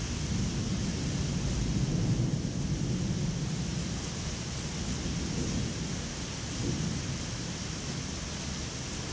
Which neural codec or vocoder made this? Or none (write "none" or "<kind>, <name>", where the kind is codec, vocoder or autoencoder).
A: none